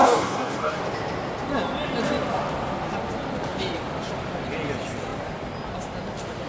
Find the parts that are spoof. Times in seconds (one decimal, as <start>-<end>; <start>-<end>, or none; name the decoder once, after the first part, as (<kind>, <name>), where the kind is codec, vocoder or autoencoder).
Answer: 0.0-0.8 (codec, DAC)